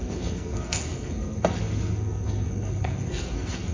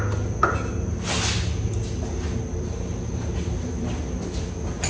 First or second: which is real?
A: second